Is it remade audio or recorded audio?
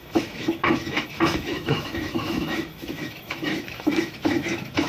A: remade